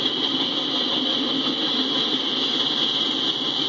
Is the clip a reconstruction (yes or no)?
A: no